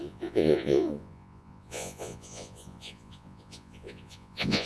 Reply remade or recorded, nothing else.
remade